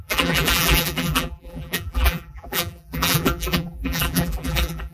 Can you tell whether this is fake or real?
fake